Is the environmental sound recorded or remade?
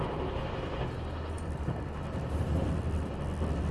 recorded